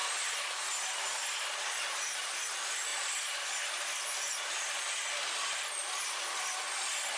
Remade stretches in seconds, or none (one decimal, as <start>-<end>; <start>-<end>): none